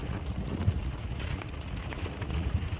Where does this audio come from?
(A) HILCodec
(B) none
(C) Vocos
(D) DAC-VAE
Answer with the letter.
C